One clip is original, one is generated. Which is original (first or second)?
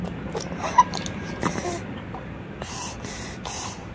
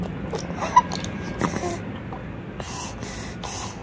second